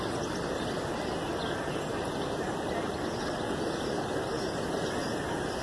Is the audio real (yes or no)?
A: yes